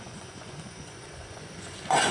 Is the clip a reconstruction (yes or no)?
yes